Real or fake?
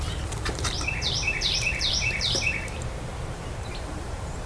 fake